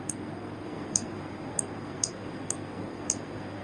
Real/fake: fake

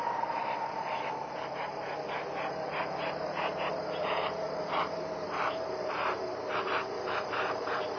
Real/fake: fake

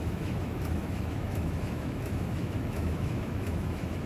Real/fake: fake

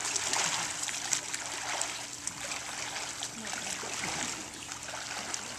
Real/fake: real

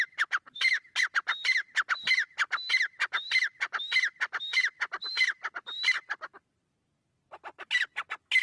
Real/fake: real